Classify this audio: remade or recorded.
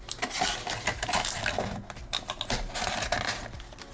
recorded